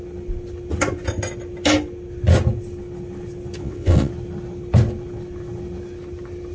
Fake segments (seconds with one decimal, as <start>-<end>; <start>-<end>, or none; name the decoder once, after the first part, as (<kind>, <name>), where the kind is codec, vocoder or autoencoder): 3.6-4.1 (vocoder, WaveNeXt)